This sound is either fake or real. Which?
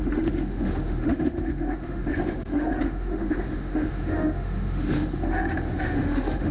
fake